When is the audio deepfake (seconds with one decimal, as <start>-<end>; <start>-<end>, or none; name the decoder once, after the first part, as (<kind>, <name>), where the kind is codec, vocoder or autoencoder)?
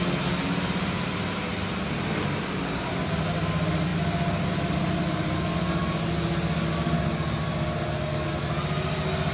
none